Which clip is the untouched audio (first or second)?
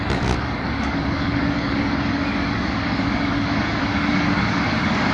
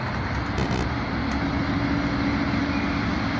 second